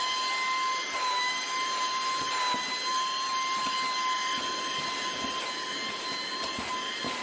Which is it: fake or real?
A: real